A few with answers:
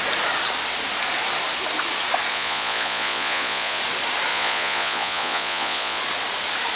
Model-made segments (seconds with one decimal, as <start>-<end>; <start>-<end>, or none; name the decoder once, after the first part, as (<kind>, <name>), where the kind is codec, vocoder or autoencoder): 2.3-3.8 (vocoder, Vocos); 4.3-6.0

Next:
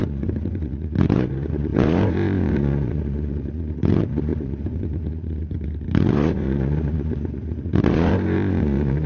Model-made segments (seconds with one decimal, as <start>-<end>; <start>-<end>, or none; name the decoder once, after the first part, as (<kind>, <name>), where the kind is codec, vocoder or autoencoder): 0.0-9.1 (vocoder, Vocos)

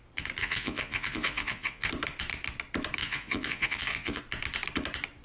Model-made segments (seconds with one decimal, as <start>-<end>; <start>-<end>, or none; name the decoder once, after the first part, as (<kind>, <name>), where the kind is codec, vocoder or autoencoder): 0.4-1.9 (vocoder, Vocos); 3.0-4.2

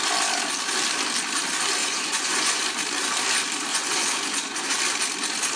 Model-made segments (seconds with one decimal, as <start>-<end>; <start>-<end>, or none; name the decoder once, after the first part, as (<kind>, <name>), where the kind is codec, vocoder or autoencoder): 1.8-2.6 (vocoder, Vocos); 3.7-4.8

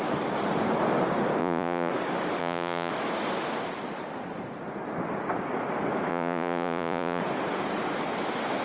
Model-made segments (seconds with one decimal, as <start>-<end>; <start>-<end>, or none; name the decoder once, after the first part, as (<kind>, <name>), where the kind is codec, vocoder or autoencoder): 1.4-1.9 (vocoder, Vocos); 2.4-2.9; 6.1-7.2